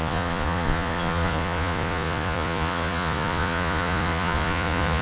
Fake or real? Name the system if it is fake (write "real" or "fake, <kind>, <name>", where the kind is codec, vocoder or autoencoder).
fake, vocoder, Vocos